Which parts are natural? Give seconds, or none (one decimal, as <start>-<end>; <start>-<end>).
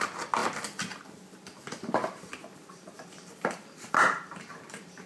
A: 0.0-2.0